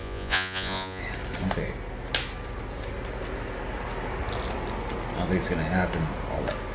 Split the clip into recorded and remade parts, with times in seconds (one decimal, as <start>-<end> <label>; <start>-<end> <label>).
0.0-1.0 remade; 1.0-6.7 recorded